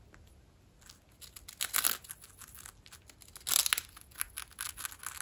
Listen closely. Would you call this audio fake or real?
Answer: real